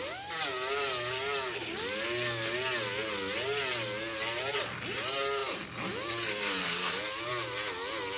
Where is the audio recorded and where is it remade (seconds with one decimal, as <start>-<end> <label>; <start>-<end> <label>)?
0.0-6.6 recorded; 6.6-7.3 remade; 7.3-8.2 recorded